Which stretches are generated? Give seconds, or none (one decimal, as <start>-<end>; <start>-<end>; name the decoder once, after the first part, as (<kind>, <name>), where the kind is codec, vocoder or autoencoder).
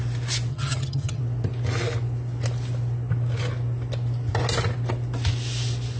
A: 0.5-1.2 (vocoder, HiFi-GAN)